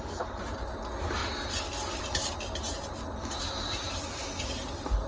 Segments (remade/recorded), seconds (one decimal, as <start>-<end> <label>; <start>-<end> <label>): 0.0-5.1 recorded